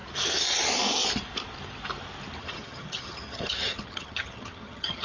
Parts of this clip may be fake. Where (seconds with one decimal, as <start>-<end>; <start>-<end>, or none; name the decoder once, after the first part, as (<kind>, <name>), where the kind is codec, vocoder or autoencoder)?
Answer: 2.4-5.0 (vocoder, HiFi-GAN)